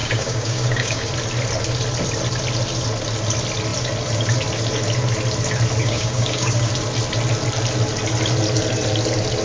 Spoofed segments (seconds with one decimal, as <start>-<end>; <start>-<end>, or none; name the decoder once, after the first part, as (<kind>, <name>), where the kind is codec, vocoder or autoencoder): 0.0-1.1 (codec, DAC); 5.8-6.7